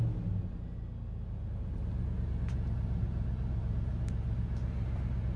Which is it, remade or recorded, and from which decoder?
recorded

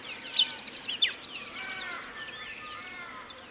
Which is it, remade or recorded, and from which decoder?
recorded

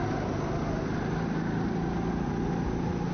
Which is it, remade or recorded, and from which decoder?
recorded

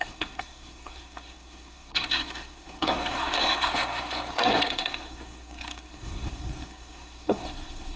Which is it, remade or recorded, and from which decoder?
remade, codec, SNAC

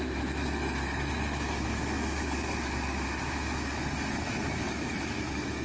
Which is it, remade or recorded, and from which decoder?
remade, autoencoder, DAC-VAE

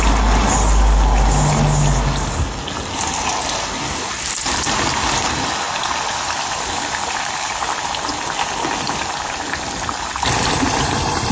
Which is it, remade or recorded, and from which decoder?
recorded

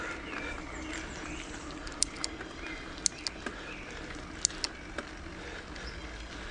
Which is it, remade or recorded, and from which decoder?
recorded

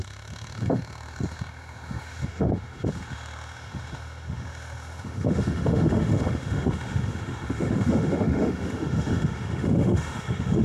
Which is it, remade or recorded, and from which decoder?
remade, autoencoder, DAC-VAE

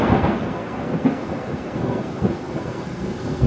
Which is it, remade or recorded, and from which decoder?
remade, codec, SNAC